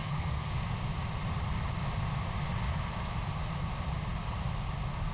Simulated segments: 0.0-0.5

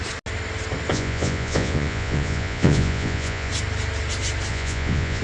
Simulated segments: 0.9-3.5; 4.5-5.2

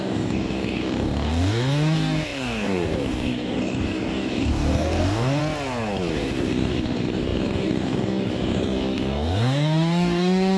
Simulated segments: 0.0-5.4; 6.1-10.6

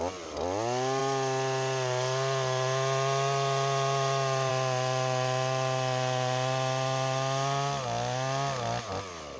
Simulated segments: none

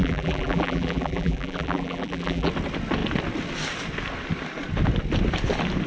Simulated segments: 0.0-2.5

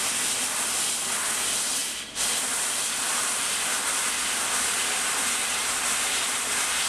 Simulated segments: none